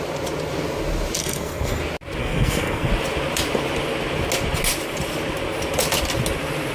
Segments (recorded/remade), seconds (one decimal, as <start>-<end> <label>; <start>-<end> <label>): 0.0-1.2 recorded; 1.2-1.8 remade; 1.8-2.2 recorded; 2.2-2.9 remade; 2.9-6.7 recorded